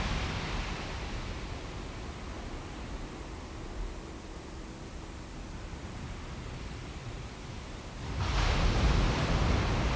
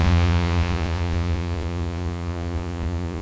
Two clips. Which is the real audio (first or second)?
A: first